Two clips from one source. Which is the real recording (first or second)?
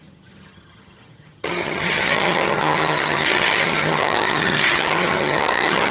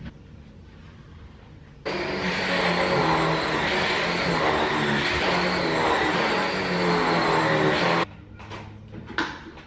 second